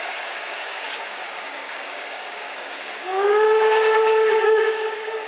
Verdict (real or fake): fake